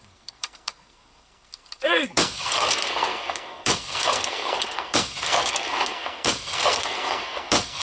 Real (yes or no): no